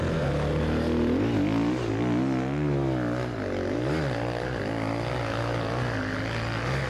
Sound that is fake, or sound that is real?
real